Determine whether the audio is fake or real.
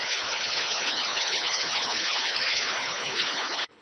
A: fake